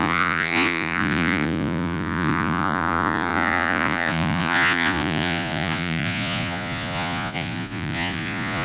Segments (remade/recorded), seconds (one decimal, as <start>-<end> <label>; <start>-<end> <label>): 0.0-8.6 remade